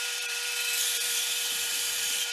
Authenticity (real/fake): fake